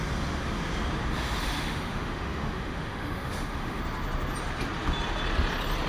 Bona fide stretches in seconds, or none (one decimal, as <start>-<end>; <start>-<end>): 0.0-1.4; 3.8-5.9